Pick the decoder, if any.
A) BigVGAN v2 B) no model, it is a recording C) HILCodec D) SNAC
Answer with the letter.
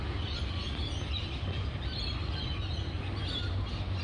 B